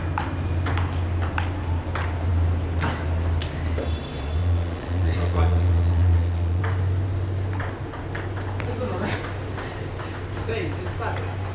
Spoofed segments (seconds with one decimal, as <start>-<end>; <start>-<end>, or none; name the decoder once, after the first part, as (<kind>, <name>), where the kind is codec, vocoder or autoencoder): 4.4-6.6 (vocoder, Vocos)